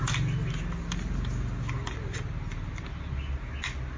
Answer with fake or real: real